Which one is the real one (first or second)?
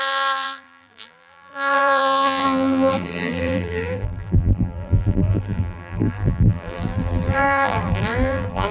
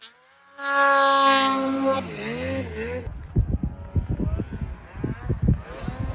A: second